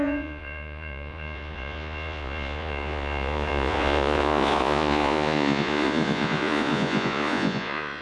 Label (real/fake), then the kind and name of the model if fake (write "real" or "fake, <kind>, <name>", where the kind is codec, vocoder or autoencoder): fake, vocoder, Vocos